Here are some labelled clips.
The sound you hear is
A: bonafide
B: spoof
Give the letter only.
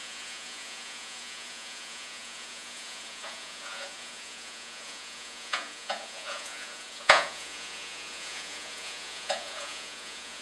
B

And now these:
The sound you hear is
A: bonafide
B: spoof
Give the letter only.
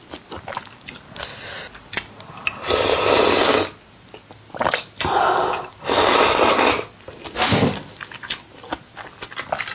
A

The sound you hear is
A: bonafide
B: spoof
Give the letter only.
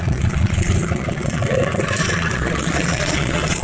B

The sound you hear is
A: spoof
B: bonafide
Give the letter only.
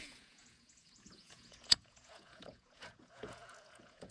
A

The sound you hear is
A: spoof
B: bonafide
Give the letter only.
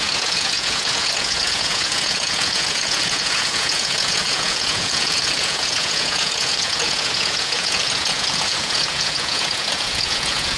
A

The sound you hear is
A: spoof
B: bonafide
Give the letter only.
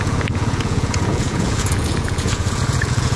A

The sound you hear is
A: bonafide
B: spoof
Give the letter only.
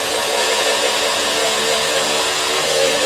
B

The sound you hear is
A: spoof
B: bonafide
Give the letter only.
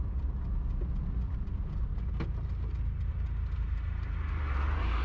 B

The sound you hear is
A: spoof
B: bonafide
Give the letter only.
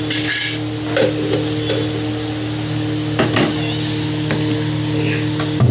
B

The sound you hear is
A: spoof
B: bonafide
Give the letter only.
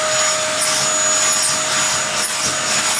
B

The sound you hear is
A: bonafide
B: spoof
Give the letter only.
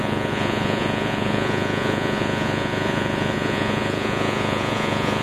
B